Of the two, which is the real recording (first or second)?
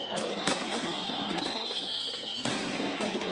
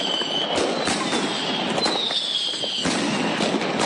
second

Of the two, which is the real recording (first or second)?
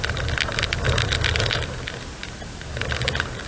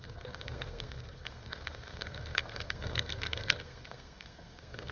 first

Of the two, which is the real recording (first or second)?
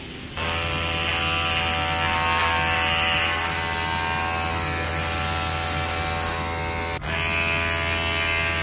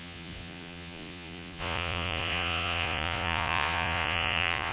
first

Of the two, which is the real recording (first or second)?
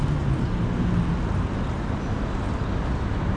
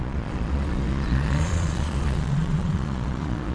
first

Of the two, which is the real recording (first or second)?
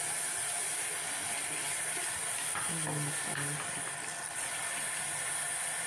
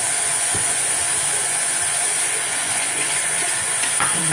first